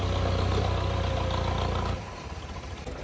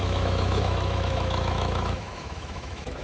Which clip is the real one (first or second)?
first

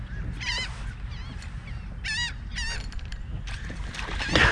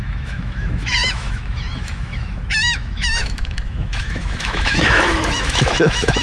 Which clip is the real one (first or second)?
first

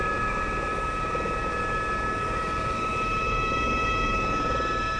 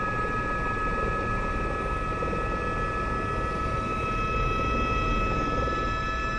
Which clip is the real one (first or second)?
second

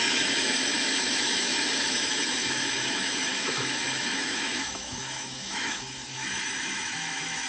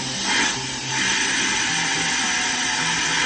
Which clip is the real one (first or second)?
second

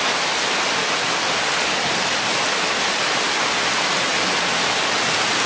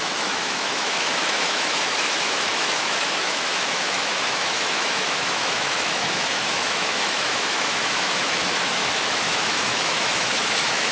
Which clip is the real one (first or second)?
first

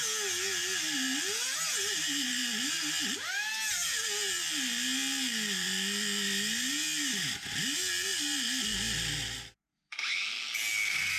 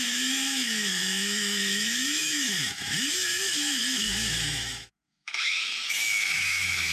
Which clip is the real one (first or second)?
first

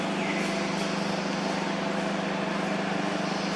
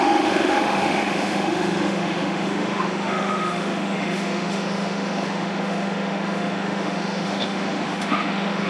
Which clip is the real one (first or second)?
first